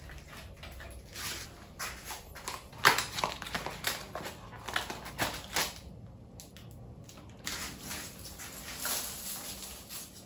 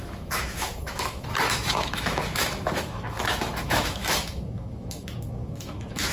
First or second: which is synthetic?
second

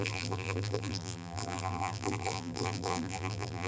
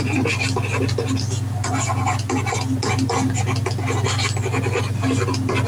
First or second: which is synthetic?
first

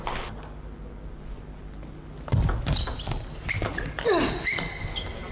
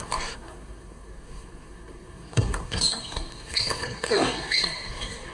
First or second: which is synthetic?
second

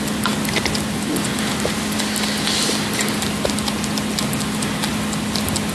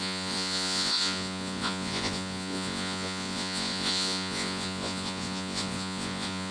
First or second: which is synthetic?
second